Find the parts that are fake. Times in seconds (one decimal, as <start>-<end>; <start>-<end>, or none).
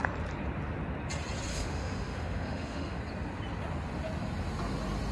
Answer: 1.5-3.0